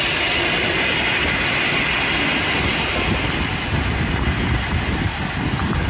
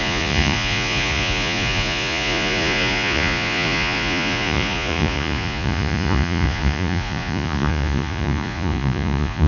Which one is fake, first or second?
second